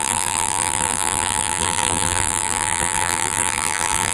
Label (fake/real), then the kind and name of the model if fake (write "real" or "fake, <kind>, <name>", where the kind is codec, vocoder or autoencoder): fake, vocoder, BigVGAN v2